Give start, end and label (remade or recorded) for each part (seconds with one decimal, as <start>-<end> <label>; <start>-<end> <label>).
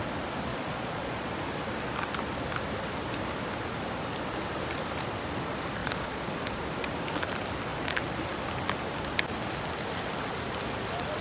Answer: 0.0-0.5 recorded; 0.5-1.3 remade; 1.3-5.8 recorded; 5.8-6.3 remade; 6.3-11.2 recorded